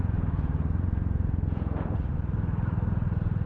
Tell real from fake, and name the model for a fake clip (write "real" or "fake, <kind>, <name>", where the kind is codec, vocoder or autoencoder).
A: real